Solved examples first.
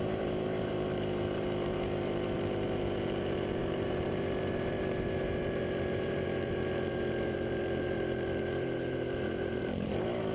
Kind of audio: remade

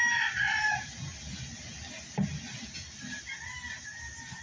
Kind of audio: recorded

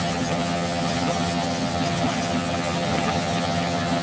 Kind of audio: remade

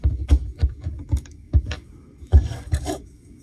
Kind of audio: remade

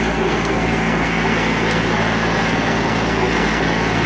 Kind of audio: remade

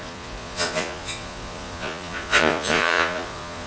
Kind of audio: remade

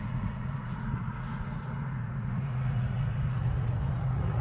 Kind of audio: remade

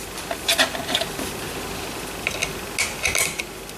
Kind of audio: recorded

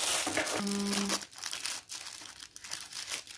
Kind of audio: recorded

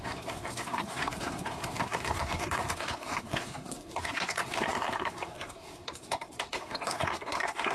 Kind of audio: remade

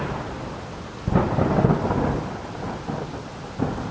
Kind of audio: recorded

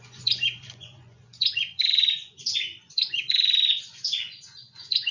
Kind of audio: remade